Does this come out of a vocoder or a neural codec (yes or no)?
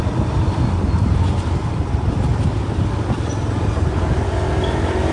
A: yes